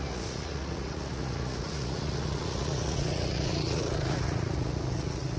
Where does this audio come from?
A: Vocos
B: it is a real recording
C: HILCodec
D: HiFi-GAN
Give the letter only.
A